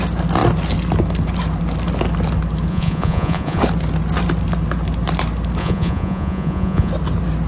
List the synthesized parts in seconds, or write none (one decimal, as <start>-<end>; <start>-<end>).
2.7-3.6; 5.6-6.9